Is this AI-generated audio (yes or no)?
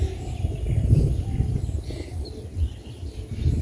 no